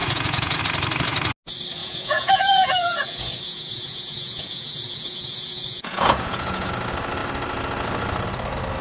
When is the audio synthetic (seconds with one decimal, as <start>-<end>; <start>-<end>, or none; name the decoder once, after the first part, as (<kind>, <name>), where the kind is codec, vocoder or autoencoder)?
0.0-0.6 (vocoder, Vocos); 1.8-6.7